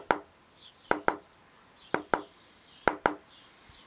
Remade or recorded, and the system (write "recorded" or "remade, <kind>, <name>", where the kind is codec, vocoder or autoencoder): recorded